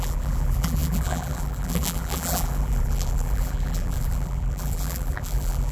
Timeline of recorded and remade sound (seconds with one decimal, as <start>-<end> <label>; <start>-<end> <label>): 0.0-5.7 remade

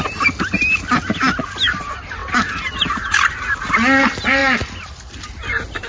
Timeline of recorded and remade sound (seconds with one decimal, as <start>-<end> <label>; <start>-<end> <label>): 0.0-4.4 recorded; 4.4-5.0 remade; 5.0-5.9 recorded

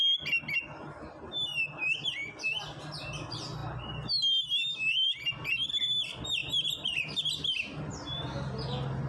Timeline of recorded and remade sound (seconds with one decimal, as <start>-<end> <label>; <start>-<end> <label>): 0.0-9.1 recorded

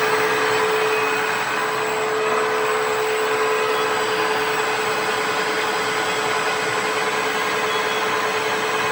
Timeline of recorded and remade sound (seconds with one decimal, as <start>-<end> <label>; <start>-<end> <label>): 0.0-8.9 recorded

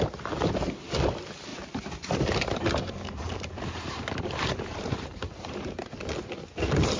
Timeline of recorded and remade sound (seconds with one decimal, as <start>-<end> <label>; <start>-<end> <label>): 0.0-1.5 recorded; 1.5-5.7 remade; 5.7-7.0 recorded

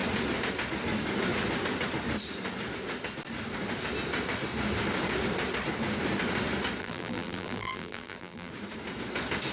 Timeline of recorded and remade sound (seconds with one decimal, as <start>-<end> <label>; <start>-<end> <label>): 0.0-6.8 recorded; 6.8-8.5 remade; 8.5-9.5 recorded

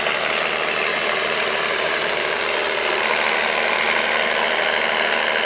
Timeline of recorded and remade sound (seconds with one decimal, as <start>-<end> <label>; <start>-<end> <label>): 0.0-0.9 recorded; 0.9-2.4 remade; 2.4-5.5 recorded